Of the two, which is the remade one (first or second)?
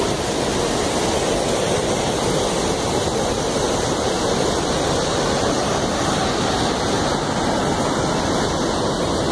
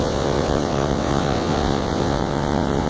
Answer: second